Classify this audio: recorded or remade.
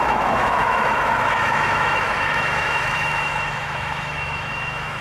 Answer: remade